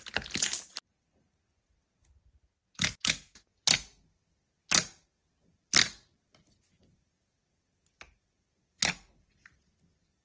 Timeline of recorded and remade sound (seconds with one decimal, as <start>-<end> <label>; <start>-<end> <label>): 0.0-10.2 recorded